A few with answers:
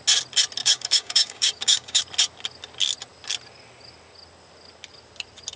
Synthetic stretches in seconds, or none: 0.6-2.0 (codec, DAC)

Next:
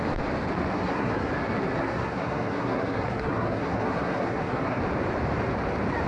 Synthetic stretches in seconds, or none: 0.7-1.3 (codec, SNAC); 1.8-4.8

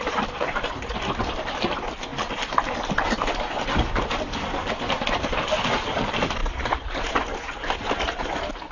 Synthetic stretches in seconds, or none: none